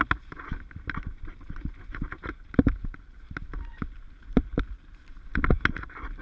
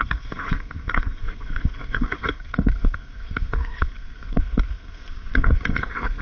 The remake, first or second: second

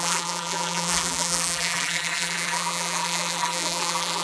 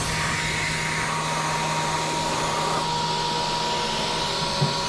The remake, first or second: first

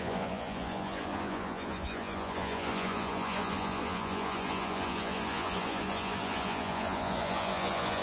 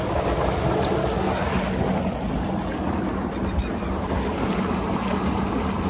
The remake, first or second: first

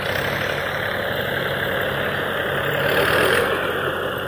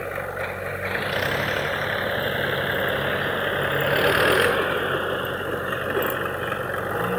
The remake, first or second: first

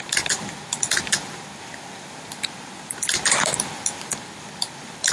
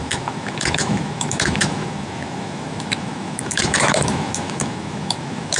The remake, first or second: second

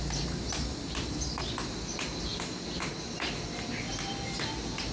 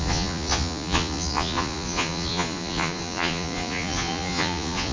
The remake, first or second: second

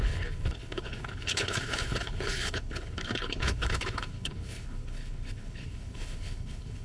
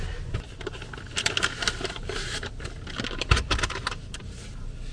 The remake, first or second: first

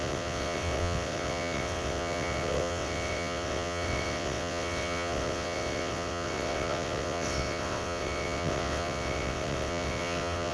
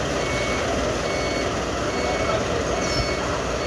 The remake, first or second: first